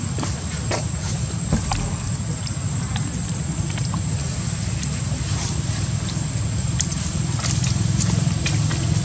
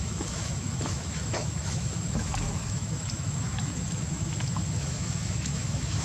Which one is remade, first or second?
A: second